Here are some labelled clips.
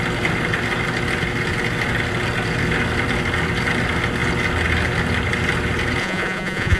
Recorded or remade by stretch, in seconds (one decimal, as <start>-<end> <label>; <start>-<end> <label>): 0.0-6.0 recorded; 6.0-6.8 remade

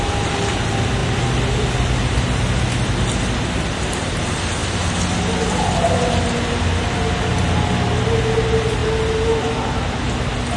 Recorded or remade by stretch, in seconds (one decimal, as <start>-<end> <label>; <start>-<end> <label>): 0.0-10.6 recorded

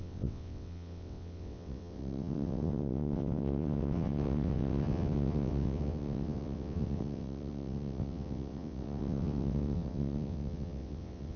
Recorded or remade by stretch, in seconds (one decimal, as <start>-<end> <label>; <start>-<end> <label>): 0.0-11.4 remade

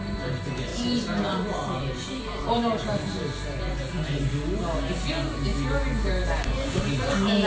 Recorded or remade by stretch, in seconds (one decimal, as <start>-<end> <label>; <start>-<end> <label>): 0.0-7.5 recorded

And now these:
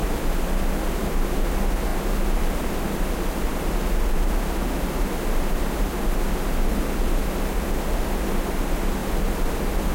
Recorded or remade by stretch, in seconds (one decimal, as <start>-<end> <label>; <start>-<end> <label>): 0.0-9.9 recorded

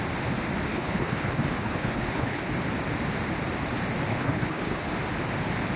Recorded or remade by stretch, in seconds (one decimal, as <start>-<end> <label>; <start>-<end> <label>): 0.0-0.7 recorded; 0.7-2.5 remade; 2.5-4.1 recorded; 4.1-4.9 remade; 4.9-5.8 recorded

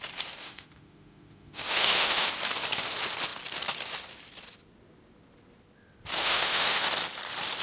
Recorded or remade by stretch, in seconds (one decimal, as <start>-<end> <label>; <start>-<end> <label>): 0.0-0.4 recorded; 0.4-2.3 remade; 2.3-6.2 recorded; 6.2-6.9 remade; 6.9-7.6 recorded

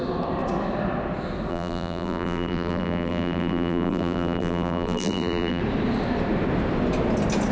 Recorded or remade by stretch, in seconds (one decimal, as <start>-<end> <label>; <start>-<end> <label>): 0.0-1.5 recorded; 1.5-5.6 remade; 5.6-7.5 recorded